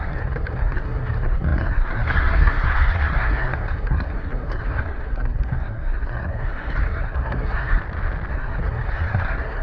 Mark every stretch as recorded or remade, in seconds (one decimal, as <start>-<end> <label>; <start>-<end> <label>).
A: 0.0-7.8 remade; 7.8-8.3 recorded; 8.3-9.6 remade